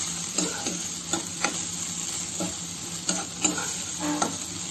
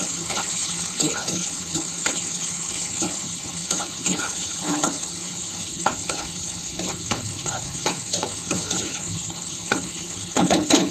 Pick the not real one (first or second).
second